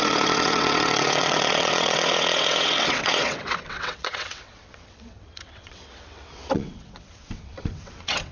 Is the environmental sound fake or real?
fake